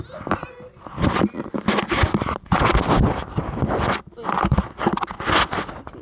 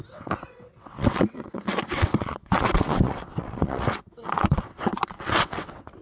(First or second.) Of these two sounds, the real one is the first